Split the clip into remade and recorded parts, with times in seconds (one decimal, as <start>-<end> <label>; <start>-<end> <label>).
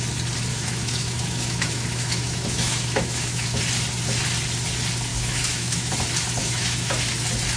0.0-0.5 recorded; 0.5-3.6 remade; 3.6-5.1 recorded; 5.1-5.9 remade; 5.9-6.4 recorded; 6.4-6.9 remade; 6.9-7.6 recorded